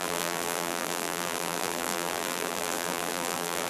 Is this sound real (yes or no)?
no